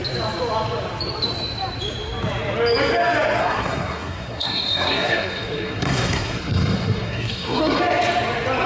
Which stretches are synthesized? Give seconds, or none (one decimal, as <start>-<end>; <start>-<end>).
3.4-7.8